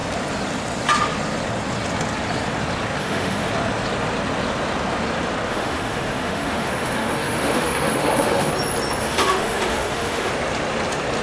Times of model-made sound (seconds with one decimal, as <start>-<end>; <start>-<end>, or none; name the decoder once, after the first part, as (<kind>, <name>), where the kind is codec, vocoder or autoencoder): 3.0-3.5 (autoencoder, DAC-VAE); 5.5-8.5; 9.0-10.3